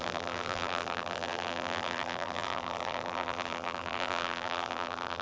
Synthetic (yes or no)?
yes